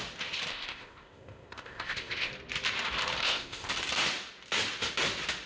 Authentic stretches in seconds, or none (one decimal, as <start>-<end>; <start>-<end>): 0.0-0.5; 2.3-3.2; 3.7-5.5